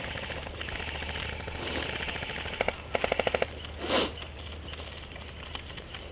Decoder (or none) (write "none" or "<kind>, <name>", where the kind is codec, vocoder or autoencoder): none